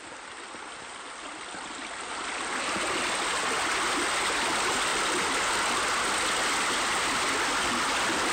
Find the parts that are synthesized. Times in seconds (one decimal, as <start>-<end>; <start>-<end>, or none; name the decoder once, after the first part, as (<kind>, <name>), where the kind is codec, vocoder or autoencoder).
none